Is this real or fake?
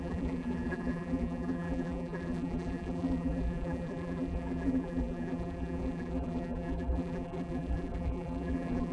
fake